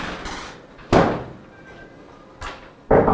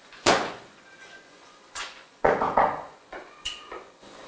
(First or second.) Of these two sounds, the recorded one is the first